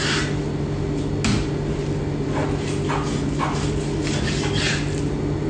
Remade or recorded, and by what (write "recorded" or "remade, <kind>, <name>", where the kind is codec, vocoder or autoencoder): recorded